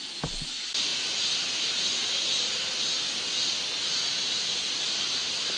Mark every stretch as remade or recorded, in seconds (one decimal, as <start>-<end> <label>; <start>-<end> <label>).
0.0-5.6 recorded